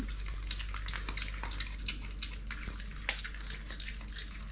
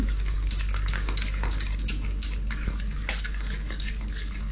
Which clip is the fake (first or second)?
second